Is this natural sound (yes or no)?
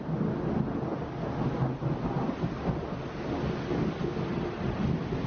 yes